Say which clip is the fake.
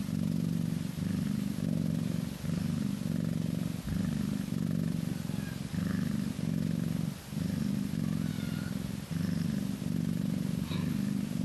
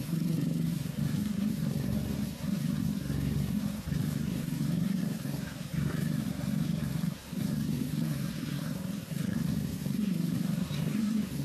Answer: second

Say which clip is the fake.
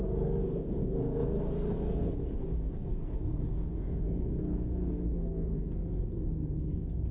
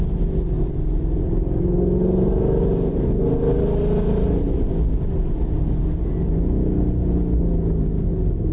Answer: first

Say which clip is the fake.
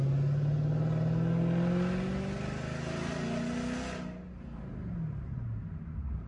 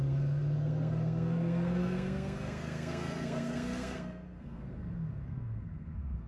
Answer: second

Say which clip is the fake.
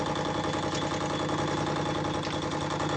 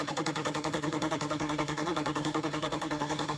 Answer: second